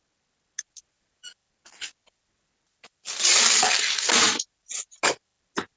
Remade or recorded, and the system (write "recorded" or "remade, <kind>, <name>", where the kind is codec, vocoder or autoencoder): recorded